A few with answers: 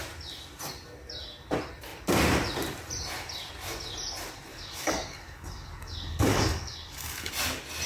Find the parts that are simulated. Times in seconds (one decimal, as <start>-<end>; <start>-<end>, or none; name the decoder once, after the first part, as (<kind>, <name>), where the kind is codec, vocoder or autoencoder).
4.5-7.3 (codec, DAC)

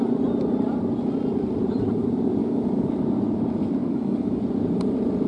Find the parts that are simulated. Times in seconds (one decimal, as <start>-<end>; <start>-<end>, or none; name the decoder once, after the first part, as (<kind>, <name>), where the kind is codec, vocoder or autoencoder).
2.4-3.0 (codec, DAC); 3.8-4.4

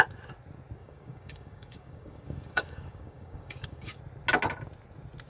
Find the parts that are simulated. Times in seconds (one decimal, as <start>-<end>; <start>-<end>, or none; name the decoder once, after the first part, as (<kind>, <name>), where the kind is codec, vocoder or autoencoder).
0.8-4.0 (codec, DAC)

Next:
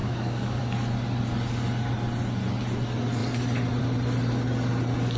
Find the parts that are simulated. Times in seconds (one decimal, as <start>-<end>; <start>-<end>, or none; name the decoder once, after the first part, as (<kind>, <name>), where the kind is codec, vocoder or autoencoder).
0.0-0.6 (codec, DAC)

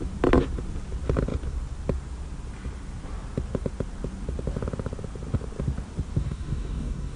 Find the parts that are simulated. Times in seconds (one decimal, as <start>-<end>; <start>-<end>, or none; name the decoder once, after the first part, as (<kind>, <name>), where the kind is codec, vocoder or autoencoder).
6.2-7.2 (codec, DAC)

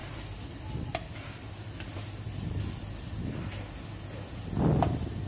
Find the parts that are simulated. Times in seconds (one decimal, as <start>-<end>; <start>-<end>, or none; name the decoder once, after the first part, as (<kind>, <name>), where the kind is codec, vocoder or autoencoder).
none